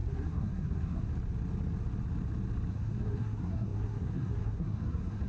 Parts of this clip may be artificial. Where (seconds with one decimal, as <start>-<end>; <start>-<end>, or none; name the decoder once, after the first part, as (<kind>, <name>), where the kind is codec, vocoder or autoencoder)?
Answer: 0.0-1.1 (codec, SNAC); 2.7-5.3